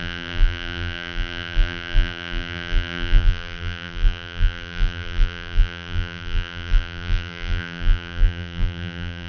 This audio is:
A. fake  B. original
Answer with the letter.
A